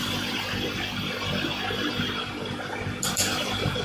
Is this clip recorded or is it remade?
recorded